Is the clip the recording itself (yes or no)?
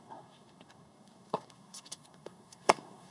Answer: no